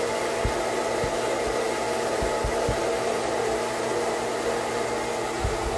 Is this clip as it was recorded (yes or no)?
yes